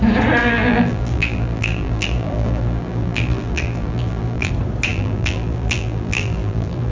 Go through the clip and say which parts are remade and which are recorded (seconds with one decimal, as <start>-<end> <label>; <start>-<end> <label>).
0.0-0.4 recorded; 0.4-4.5 remade; 4.5-4.9 recorded; 4.9-6.9 remade